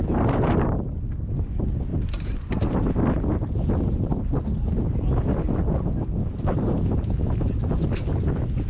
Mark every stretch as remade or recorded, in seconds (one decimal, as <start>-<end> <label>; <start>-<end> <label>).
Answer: 0.0-1.9 recorded; 1.9-2.5 remade; 2.5-6.2 recorded; 6.2-6.7 remade; 6.7-8.7 recorded